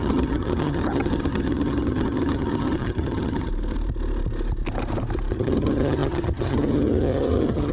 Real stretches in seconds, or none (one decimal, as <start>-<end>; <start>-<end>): 3.5-5.3